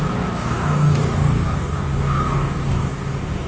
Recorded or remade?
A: remade